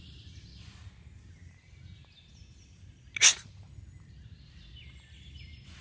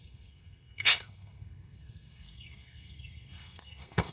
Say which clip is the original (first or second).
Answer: first